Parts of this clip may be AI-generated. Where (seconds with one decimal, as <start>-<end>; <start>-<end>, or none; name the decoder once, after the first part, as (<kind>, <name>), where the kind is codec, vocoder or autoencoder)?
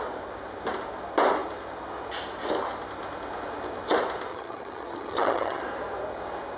4.3-5.6 (vocoder, HiFi-GAN)